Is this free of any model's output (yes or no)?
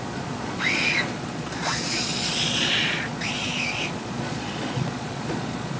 no